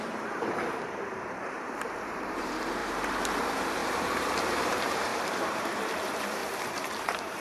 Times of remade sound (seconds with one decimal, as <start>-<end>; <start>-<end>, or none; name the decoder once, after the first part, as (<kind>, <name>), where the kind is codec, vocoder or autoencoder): 0.0-7.4 (vocoder, BigVGAN v2)